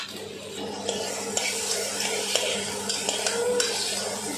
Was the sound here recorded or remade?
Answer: recorded